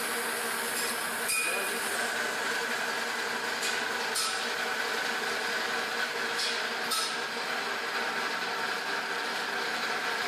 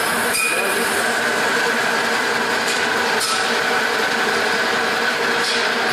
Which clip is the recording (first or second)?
first